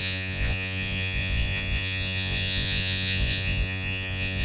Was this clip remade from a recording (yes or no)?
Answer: yes